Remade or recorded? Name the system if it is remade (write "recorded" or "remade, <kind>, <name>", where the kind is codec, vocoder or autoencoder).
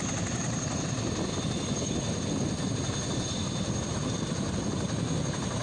recorded